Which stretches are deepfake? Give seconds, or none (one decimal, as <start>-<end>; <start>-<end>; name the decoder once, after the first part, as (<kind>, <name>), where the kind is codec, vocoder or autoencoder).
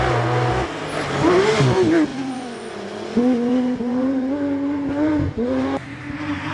2.1-6.0 (vocoder, Vocos)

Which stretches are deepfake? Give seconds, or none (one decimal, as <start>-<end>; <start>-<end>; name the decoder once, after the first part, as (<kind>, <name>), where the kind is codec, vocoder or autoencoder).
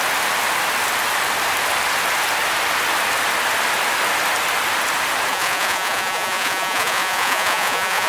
5.3-8.1 (vocoder, Vocos)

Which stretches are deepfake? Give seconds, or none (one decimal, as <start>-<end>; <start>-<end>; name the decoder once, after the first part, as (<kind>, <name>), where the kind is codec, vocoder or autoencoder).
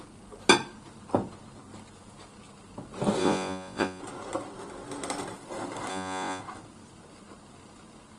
3.2-4.0 (vocoder, Vocos); 5.9-6.4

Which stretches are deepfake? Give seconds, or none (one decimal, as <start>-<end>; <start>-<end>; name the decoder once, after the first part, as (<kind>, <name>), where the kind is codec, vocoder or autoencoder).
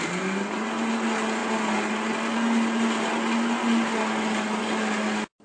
none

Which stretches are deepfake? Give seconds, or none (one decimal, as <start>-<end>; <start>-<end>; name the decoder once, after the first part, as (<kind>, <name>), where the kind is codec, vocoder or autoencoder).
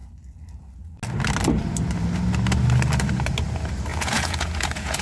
3.9-5.0 (vocoder, Vocos)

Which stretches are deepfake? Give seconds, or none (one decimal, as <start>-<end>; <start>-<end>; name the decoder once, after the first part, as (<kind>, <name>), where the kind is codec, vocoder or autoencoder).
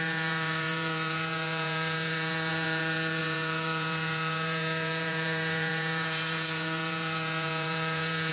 0.0-8.3 (vocoder, Vocos)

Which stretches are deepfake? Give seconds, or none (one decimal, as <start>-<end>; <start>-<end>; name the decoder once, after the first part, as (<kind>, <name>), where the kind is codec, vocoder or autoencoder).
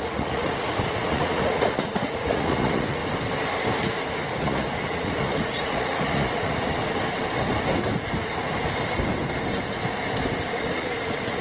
0.0-3.0 (vocoder, Vocos); 4.4-6.8; 10.6-11.4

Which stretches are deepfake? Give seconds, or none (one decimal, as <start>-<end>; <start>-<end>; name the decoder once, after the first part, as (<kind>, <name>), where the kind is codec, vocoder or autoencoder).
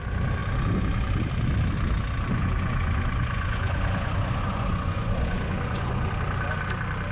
2.4-6.1 (vocoder, Vocos)